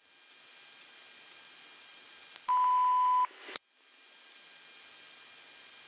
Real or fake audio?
real